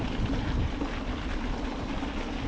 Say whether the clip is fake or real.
real